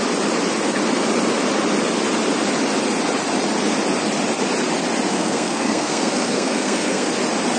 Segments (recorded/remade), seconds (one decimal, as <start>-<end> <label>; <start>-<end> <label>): 0.0-5.1 recorded; 5.1-7.1 remade; 7.1-7.6 recorded